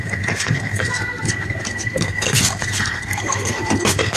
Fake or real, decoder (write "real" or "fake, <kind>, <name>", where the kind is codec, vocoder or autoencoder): fake, codec, SNAC